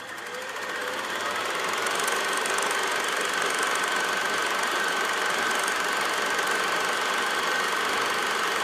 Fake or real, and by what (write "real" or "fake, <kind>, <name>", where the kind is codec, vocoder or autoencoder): fake, vocoder, BigVGAN v2